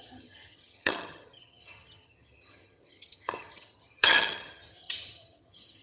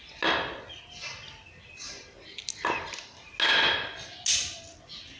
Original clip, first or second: second